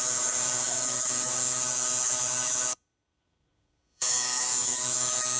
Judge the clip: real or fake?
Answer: fake